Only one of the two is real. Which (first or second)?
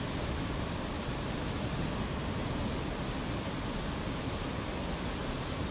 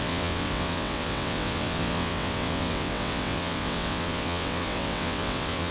first